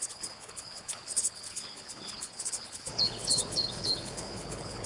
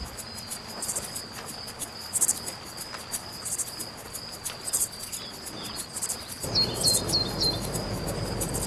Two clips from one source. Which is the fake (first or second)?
first